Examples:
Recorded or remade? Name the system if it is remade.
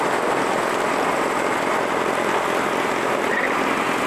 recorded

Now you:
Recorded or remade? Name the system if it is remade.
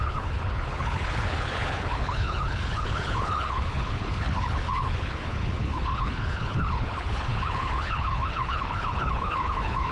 remade, codec, HILCodec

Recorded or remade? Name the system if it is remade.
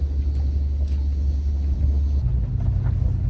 recorded